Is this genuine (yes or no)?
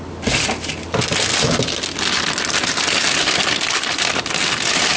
yes